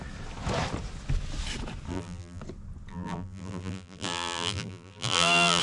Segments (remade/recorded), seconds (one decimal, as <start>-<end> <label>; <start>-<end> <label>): 0.0-1.9 recorded; 1.9-2.4 remade; 2.4-2.9 recorded; 2.9-5.6 remade